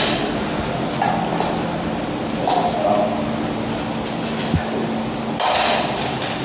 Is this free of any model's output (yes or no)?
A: yes